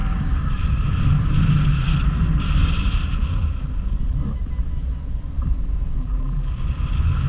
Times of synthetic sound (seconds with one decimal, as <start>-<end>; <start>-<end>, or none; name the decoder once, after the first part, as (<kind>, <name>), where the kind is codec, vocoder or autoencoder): 6.0-6.5 (vocoder, BigVGAN v2)